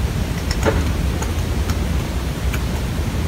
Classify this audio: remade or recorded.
recorded